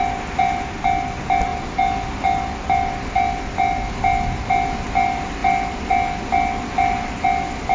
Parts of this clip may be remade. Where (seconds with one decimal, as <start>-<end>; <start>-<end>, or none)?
none